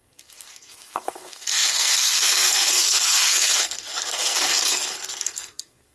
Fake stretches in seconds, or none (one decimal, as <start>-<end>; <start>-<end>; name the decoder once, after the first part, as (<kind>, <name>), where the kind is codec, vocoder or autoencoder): 0.0-5.9 (codec, SNAC)